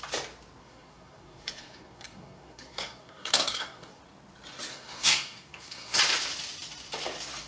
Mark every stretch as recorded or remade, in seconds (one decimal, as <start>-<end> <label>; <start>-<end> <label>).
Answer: 0.0-0.6 recorded; 0.6-4.0 remade; 4.0-4.7 recorded; 4.7-6.0 remade; 6.0-7.5 recorded